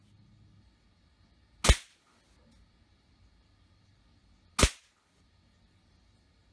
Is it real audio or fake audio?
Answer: real